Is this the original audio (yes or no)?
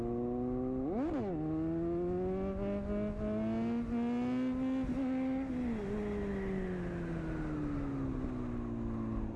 yes